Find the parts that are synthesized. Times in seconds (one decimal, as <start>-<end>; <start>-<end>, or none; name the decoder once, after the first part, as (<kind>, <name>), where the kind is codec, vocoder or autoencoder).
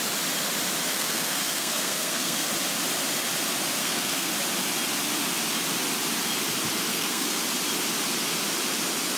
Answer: 0.9-2.5 (codec, SNAC); 3.8-4.3; 6.9-7.4